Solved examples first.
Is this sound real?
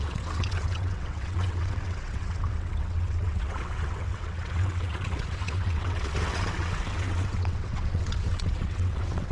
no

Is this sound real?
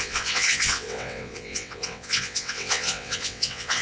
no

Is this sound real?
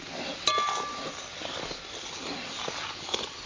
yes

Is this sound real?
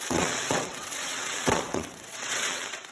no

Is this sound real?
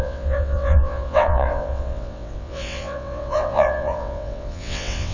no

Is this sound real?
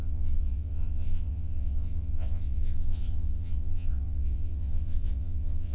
no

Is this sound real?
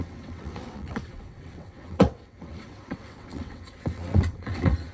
no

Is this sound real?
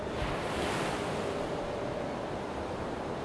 yes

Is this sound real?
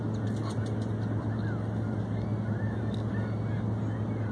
yes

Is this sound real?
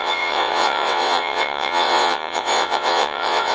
no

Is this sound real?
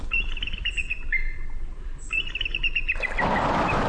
yes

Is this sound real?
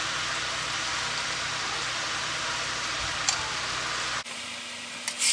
yes